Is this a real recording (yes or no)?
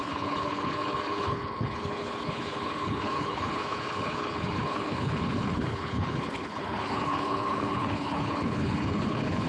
no